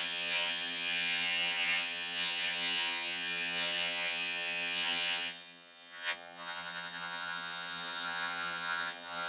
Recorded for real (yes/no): no